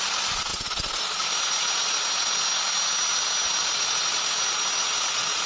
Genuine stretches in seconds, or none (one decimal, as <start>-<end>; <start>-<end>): 0.0-5.5

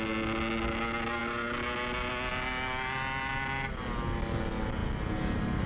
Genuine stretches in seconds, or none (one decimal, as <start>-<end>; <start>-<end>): 0.0-5.7

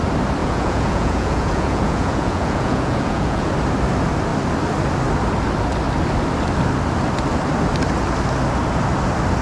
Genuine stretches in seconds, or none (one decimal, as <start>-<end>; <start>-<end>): 0.0-0.4; 3.5-9.4

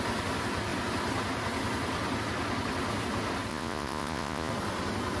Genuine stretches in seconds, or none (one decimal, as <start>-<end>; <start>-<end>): 0.0-3.5; 4.5-5.2

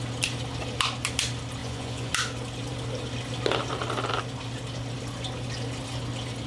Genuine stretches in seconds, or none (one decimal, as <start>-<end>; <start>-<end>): 0.0-1.6; 2.1-6.5

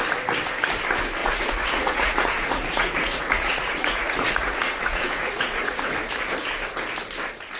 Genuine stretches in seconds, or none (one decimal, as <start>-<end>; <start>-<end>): 0.0-1.2; 5.8-7.6

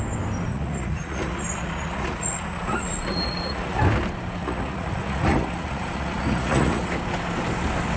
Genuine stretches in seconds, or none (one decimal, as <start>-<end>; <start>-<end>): 0.0-0.5; 3.8-4.4; 6.9-8.0